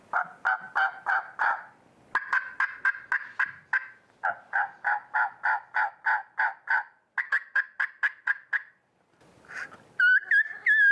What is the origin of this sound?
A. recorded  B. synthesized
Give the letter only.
A